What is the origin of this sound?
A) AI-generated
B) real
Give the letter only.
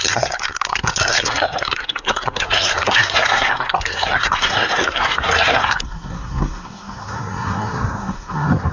A